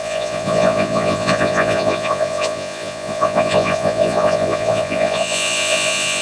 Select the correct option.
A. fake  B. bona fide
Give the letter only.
A